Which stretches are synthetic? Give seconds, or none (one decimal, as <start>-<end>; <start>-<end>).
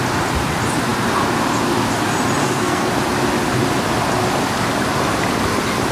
2.4-2.9